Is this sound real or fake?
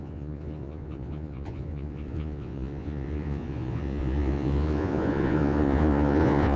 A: fake